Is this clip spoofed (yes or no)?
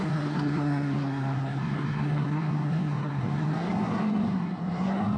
yes